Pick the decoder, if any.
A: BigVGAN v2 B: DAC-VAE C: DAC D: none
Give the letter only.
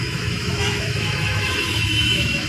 B